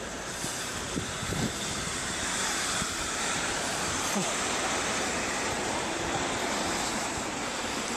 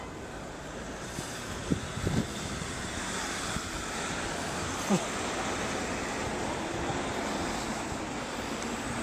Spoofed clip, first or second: first